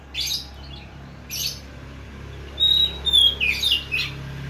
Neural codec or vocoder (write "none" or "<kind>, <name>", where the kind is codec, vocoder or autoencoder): none